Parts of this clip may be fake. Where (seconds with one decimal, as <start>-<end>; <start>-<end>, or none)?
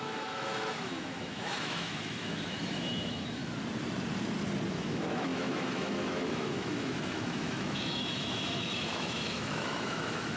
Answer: 0.0-3.4; 4.7-10.4